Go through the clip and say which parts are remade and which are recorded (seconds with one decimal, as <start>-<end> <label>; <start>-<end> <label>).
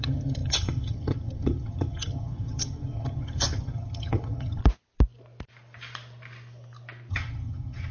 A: 0.0-4.6 remade; 4.6-7.1 recorded; 7.1-7.9 remade